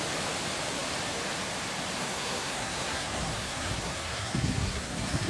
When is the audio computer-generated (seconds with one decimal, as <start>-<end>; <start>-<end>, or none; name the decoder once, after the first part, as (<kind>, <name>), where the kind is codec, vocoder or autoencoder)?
2.0-5.3 (codec, SNAC)